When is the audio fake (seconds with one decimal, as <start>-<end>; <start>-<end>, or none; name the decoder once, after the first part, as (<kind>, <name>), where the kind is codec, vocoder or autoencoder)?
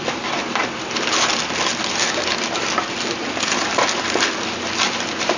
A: none